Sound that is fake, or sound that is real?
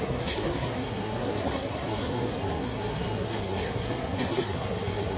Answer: fake